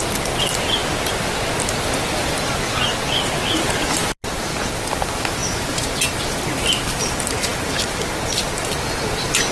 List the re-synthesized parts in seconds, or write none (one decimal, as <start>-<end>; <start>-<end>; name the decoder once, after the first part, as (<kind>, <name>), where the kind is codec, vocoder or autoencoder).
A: none